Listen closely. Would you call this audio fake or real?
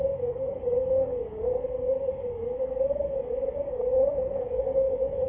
fake